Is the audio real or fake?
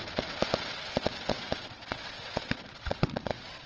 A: fake